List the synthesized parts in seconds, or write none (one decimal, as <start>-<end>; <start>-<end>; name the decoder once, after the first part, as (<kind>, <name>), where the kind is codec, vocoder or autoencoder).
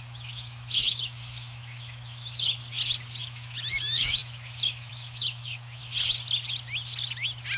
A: 0.0-2.6 (autoencoder, DAC-VAE); 3.2-5.8